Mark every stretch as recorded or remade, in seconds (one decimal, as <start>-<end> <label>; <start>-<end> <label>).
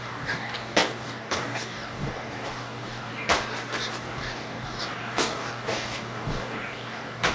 0.0-3.1 remade; 3.1-4.0 recorded; 4.0-7.3 remade